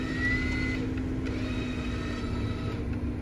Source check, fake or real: real